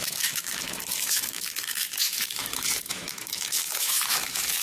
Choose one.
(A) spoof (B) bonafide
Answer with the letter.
A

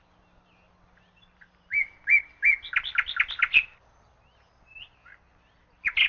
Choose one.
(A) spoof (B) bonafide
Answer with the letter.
B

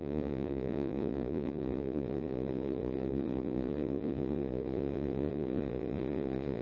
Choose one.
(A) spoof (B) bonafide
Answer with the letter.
A